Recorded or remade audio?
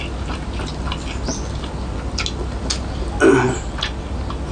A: recorded